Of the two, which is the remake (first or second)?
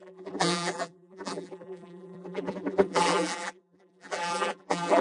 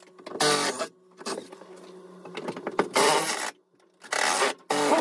first